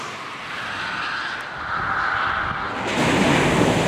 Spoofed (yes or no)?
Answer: no